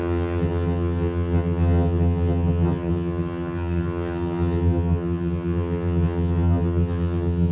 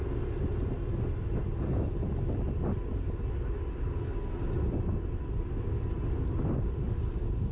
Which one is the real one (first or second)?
second